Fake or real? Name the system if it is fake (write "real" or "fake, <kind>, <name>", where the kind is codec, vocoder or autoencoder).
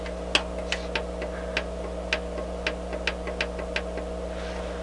real